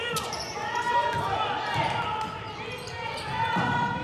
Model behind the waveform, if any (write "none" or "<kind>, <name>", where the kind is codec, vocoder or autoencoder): none